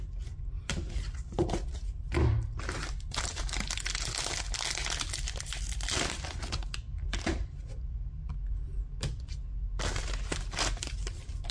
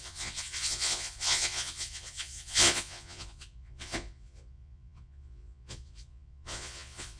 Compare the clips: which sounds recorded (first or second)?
first